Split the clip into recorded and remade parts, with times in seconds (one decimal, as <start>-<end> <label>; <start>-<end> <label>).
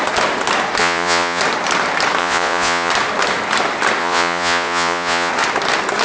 0.0-0.8 recorded; 0.8-1.4 remade; 1.4-2.2 recorded; 2.2-2.9 remade; 2.9-4.0 recorded; 4.0-5.3 remade; 5.3-6.0 recorded